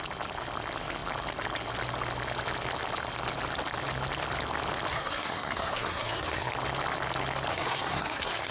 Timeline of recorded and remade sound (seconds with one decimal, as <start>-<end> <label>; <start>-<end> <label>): 0.0-4.9 recorded; 4.9-6.5 remade; 6.5-7.5 recorded; 7.5-8.5 remade